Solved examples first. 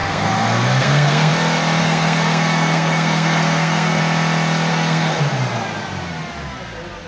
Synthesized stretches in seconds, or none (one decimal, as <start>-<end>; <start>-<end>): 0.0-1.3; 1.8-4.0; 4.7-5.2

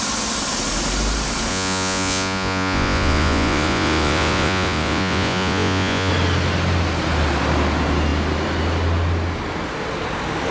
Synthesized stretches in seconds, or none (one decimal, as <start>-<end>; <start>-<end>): 1.5-6.1

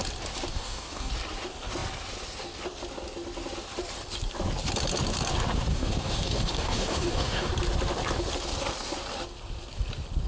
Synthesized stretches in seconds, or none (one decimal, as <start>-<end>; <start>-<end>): 0.5-1.1; 5.7-7.5

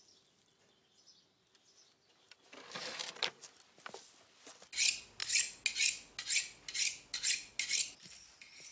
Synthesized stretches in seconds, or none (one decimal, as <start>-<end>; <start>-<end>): none

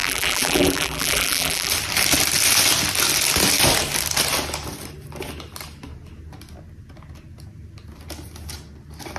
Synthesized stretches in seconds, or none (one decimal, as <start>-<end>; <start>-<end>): 0.0-1.7